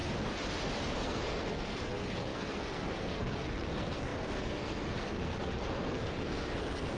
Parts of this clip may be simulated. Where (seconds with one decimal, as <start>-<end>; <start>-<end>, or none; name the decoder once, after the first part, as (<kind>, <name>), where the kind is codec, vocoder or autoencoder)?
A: 0.9-7.0 (codec, SNAC)

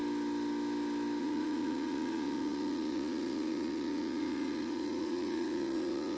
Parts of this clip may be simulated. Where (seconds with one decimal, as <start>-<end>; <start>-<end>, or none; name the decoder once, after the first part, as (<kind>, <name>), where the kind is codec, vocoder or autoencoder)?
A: 1.2-6.2 (vocoder, Vocos)

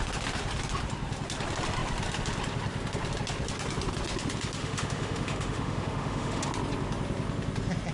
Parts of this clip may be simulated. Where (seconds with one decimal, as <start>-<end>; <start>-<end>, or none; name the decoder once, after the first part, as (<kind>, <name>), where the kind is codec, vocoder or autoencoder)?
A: 4.6-6.5 (autoencoder, DAC-VAE)

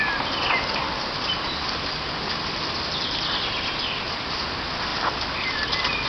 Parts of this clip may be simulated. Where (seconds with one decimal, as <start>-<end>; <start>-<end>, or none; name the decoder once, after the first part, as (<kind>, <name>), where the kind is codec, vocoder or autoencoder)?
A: none

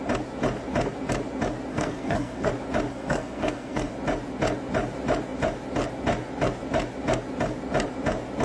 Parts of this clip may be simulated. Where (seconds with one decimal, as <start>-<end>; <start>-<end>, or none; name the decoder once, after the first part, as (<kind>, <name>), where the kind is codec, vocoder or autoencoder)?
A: 1.7-2.5 (codec, SNAC); 2.9-3.9

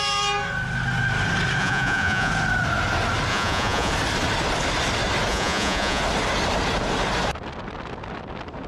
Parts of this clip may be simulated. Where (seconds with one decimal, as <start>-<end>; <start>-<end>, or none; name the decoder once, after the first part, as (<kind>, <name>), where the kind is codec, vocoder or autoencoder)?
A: 1.6-2.3 (vocoder, Vocos); 3.3-3.9; 5.3-6.0